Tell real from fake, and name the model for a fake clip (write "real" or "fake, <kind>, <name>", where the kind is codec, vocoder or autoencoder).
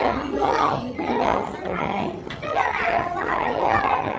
fake, vocoder, HiFi-GAN